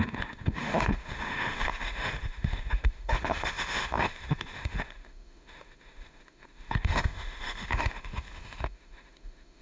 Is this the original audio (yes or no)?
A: no